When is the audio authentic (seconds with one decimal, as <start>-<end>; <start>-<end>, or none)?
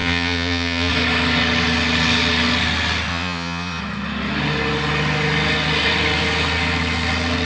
0.9-3.1; 3.8-7.5